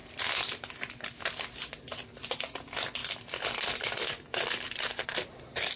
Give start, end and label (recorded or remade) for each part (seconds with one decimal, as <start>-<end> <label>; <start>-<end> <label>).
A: 0.0-5.8 recorded